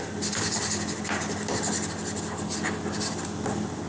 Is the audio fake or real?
real